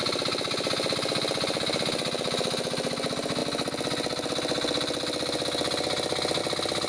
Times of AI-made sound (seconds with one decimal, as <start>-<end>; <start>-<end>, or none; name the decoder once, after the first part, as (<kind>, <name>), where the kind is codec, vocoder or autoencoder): none